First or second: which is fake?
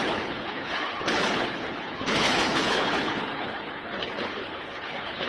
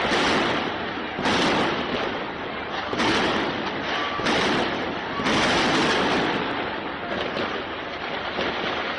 first